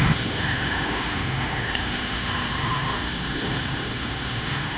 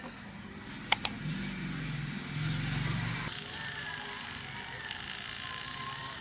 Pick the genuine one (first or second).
second